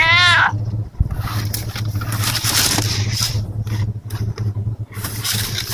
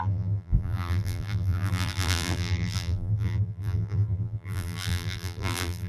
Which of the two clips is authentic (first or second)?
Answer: first